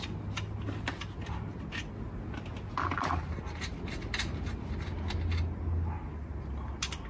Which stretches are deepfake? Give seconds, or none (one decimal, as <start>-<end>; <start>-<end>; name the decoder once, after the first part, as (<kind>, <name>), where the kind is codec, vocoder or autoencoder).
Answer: none